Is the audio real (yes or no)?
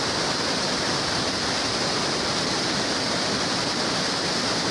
yes